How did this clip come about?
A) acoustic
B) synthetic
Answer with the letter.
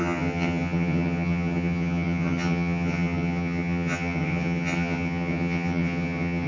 B